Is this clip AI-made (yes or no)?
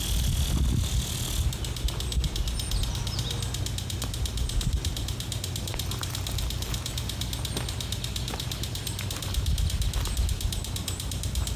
no